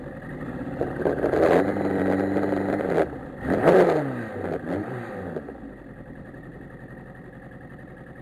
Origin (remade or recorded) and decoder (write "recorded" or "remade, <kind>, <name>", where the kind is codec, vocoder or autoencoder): remade, vocoder, BigVGAN v2